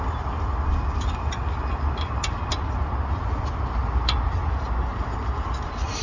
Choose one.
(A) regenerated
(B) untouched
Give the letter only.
B